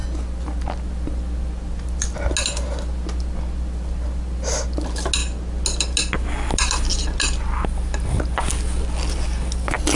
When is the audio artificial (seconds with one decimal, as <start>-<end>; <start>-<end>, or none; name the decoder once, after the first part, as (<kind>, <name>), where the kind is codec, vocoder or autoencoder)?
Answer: none